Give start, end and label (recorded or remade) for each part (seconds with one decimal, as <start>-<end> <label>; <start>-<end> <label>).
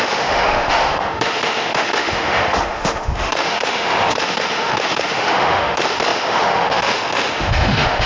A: 0.0-8.1 remade